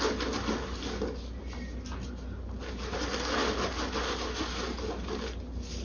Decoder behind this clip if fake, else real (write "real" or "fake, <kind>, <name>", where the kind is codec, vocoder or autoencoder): real